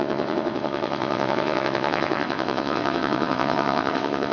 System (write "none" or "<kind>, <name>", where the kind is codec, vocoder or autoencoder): vocoder, WaveNeXt